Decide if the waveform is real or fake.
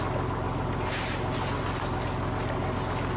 real